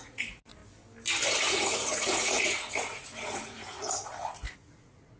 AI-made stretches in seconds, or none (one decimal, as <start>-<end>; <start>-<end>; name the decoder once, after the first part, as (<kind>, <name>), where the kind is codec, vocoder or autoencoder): 0.0-0.6 (vocoder, Vocos); 1.5-5.2